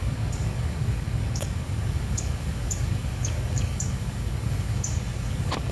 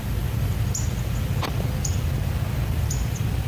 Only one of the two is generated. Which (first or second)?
first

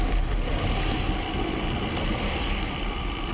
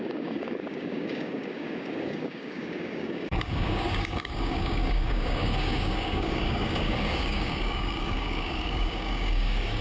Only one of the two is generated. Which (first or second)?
second